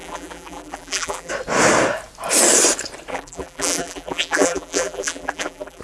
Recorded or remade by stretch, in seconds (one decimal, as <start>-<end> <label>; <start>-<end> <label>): 0.0-1.3 remade; 1.3-3.1 recorded; 3.1-5.8 remade